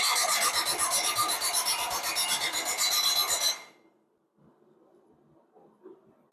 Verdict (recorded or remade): recorded